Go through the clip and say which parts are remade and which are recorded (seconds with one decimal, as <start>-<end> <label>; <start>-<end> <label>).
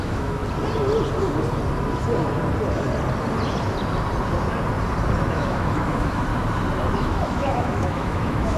0.0-0.4 remade; 0.4-5.3 recorded; 5.3-6.3 remade; 6.3-6.9 recorded; 6.9-8.6 remade